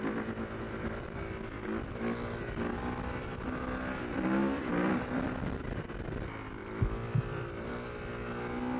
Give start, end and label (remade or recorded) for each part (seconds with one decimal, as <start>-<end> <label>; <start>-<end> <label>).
0.0-4.4 recorded; 4.4-5.6 remade; 5.6-6.6 recorded; 6.6-7.7 remade; 7.7-8.8 recorded